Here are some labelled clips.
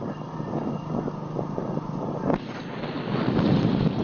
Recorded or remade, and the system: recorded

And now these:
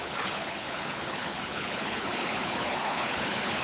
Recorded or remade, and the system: remade, codec, HILCodec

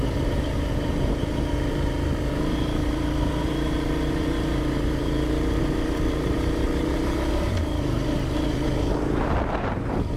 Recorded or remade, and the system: remade, vocoder, BigVGAN v2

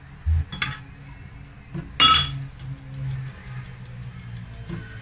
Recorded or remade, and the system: recorded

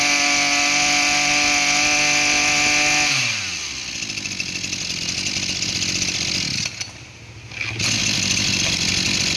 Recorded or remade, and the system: recorded